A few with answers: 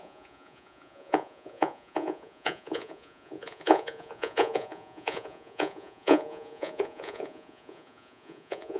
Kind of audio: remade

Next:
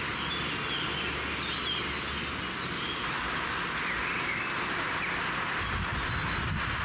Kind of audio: recorded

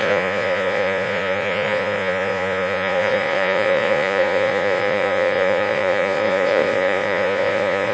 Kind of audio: remade